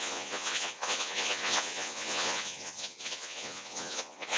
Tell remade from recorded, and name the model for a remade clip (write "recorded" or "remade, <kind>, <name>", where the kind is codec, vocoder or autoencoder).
remade, vocoder, Vocos